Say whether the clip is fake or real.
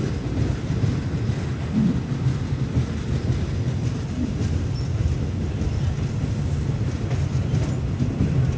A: real